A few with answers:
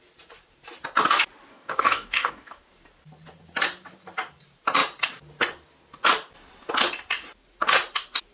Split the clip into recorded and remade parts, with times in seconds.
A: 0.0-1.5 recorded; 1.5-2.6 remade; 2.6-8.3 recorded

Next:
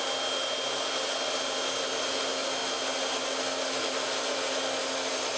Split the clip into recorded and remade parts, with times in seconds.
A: 0.0-5.4 recorded

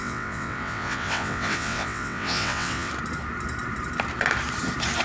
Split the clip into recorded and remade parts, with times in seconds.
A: 0.0-2.9 remade; 2.9-5.0 recorded

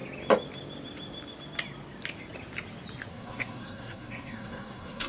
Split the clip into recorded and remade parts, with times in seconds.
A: 0.0-3.1 recorded; 3.1-5.1 remade

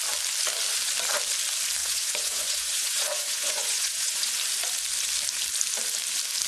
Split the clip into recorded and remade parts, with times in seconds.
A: 0.0-1.8 recorded; 1.8-4.3 remade; 4.3-6.5 recorded